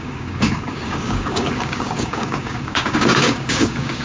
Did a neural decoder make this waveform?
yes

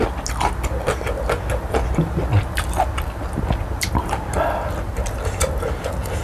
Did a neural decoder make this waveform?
no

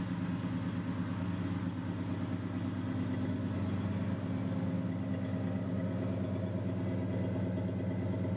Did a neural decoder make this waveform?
no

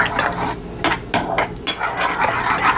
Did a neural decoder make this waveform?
no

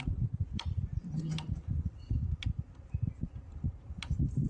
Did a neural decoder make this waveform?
yes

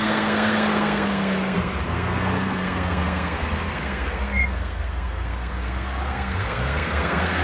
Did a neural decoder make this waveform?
yes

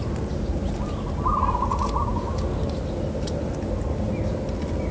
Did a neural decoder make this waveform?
no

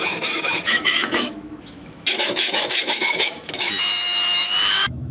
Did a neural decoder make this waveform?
yes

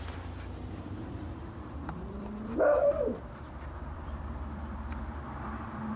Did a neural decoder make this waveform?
yes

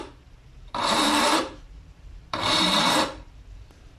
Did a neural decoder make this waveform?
yes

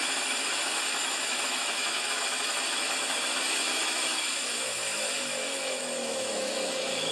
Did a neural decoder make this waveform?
yes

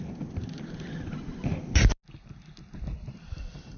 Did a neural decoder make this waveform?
no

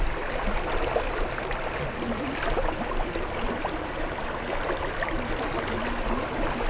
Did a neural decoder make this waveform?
no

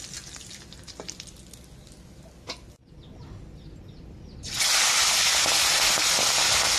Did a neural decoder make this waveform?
no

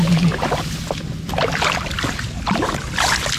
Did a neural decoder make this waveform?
no